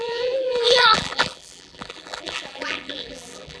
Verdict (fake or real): fake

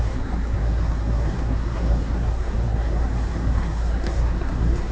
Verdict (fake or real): fake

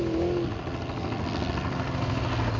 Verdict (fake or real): real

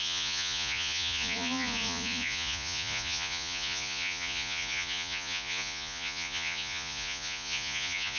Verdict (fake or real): fake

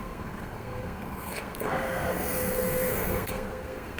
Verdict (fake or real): fake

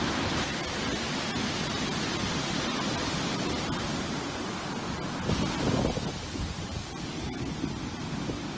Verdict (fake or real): real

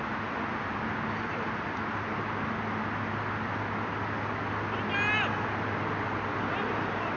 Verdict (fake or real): real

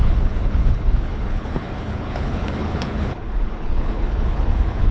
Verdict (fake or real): fake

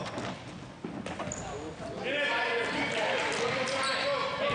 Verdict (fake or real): real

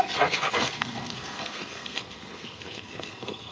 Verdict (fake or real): fake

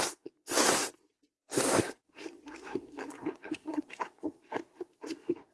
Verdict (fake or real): fake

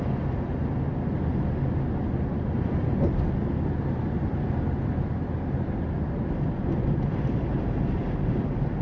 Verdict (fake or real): real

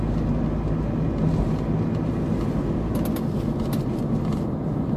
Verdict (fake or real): real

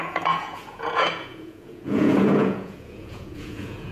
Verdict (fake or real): fake